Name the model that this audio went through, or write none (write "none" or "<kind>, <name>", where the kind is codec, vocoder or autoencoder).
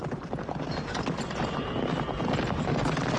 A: none